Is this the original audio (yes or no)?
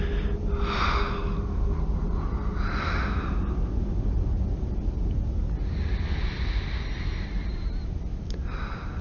yes